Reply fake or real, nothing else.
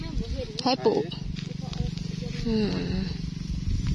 real